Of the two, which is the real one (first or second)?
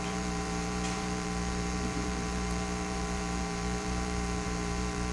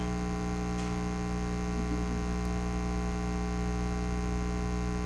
second